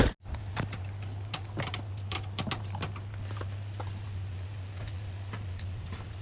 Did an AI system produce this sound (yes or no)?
no